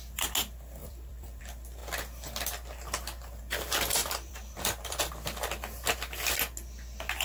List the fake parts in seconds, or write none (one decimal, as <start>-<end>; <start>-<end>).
0.8-1.4; 4.0-5.1